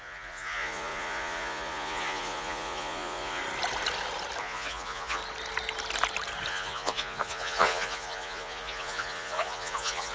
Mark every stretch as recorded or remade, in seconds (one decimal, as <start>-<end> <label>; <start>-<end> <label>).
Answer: 0.0-3.4 remade; 3.4-4.4 recorded; 4.4-5.2 remade; 5.2-6.5 recorded; 6.5-10.1 remade